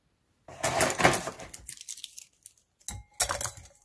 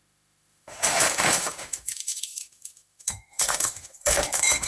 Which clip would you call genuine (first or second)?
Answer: first